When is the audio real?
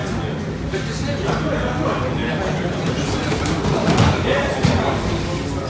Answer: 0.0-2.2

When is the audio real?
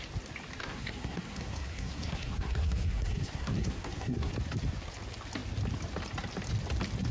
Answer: 0.0-0.6; 4.3-7.1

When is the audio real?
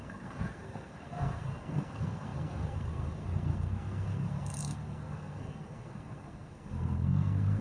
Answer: none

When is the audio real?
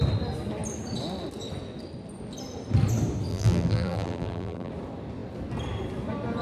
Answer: 0.0-3.3; 4.7-6.4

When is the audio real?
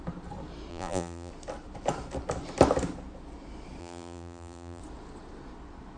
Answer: 0.0-0.7; 1.3-3.8; 4.8-6.0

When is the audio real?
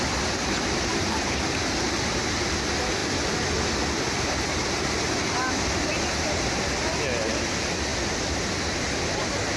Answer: 0.0-9.6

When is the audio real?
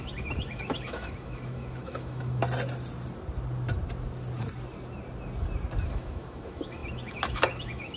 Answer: 2.4-5.9